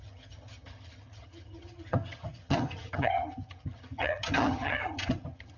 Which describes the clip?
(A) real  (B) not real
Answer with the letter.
B